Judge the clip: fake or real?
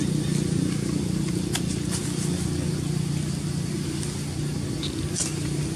real